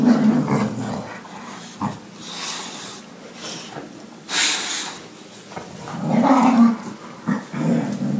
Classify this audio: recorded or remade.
recorded